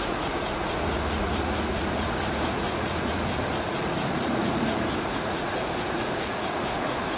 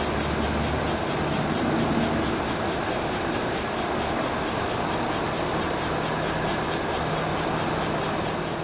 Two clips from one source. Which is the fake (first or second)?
first